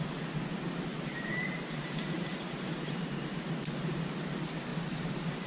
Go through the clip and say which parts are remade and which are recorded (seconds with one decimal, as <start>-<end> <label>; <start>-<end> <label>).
0.0-0.9 recorded; 0.9-3.2 remade; 3.2-4.7 recorded; 4.7-5.5 remade